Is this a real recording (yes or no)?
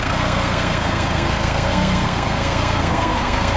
no